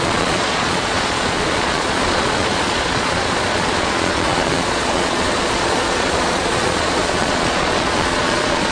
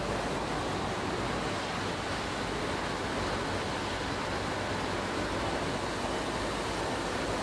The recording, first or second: second